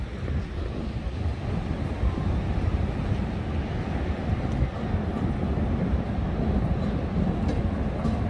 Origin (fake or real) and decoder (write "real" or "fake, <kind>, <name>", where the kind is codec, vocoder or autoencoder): real